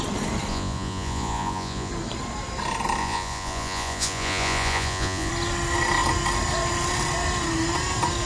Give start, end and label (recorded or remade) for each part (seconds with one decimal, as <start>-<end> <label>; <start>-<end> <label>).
0.0-0.5 recorded; 0.5-1.9 remade; 1.9-3.0 recorded; 3.0-5.3 remade; 5.3-8.3 recorded